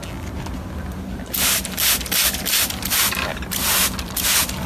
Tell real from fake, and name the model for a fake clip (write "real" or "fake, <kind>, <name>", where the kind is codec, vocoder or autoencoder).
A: real